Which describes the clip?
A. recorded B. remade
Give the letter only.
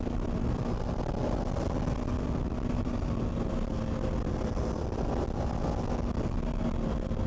A